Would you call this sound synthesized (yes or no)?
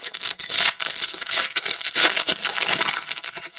yes